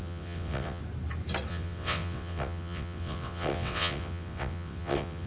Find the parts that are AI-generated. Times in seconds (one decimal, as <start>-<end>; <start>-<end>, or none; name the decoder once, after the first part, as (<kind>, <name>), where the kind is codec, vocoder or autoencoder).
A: 0.0-0.8 (vocoder, WaveNeXt); 1.5-5.3